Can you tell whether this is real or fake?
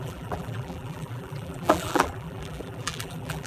fake